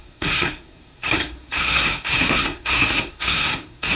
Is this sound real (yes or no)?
no